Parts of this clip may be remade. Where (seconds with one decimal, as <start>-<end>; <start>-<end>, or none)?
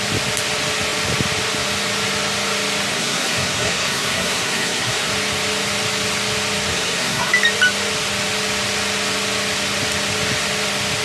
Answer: 2.9-5.1; 6.7-7.3